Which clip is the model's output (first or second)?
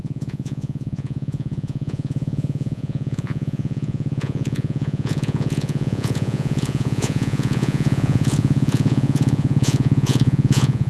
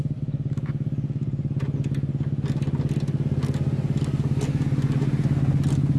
first